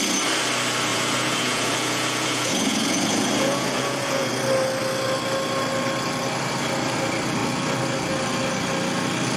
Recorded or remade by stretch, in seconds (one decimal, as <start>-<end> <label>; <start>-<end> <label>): 0.0-0.9 recorded; 0.9-4.3 remade; 4.3-9.4 recorded